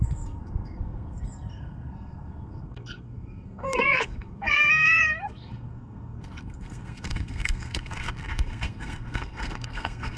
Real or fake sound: fake